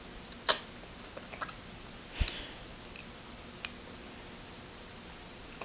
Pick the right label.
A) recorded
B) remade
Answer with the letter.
A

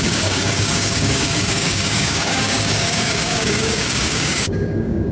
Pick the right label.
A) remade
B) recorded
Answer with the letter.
A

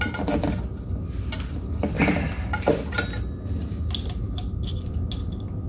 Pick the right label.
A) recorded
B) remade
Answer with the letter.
A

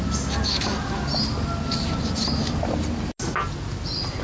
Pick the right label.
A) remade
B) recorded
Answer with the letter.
B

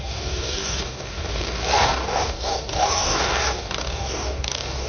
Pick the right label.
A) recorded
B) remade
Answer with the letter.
B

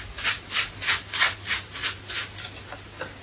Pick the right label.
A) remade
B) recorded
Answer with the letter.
B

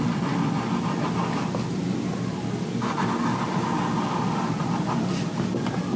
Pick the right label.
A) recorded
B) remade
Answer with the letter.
A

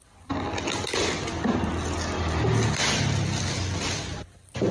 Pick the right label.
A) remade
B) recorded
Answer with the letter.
B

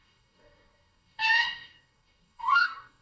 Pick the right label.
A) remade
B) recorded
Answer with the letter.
A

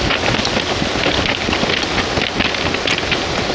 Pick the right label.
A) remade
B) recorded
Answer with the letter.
B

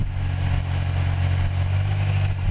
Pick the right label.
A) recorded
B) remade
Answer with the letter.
A